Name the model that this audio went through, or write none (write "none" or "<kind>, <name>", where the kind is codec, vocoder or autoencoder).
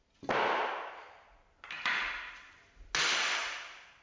none